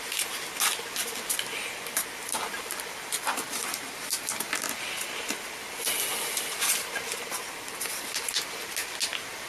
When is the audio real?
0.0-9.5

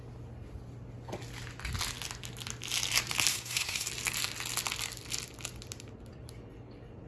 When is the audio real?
0.0-3.3; 3.9-7.1

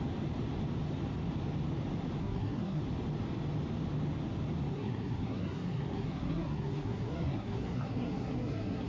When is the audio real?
0.0-2.2; 2.8-4.7